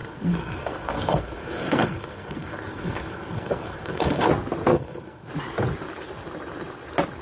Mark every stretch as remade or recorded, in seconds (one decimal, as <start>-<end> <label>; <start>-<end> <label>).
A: 0.0-4.3 remade; 4.3-4.7 recorded; 4.7-5.3 remade; 5.3-7.2 recorded